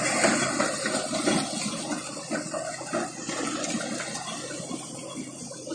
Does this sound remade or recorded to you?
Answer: recorded